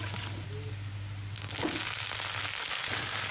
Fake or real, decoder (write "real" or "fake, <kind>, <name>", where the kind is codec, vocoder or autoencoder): real